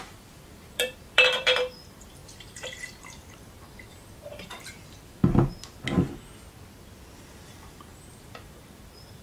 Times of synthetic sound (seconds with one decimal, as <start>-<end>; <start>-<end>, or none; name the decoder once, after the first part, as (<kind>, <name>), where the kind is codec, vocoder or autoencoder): 0.0-2.2 (vocoder, BigVGAN v2); 3.0-5.2; 7.2-9.2

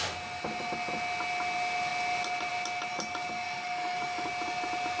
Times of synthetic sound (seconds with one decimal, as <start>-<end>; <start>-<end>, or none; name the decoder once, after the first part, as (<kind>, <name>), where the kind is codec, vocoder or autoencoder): 2.9-4.3 (codec, DAC)

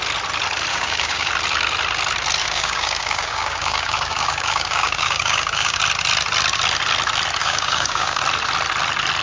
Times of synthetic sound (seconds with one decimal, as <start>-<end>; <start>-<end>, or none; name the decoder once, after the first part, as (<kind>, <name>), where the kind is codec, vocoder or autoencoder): 0.7-1.3 (codec, DAC); 2.4-5.8; 7.4-8.2

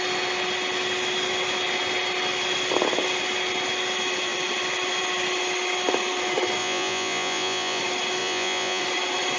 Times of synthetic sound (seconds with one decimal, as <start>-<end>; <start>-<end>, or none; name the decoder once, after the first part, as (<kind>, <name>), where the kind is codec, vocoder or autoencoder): 6.6-7.8 (vocoder, Vocos); 8.2-8.8